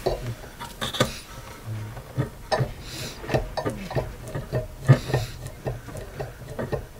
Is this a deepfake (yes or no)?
no